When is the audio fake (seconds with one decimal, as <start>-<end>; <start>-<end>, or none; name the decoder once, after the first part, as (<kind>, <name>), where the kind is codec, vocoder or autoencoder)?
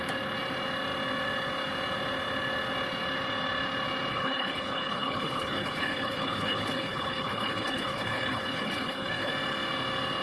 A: 4.1-9.3 (codec, HILCodec)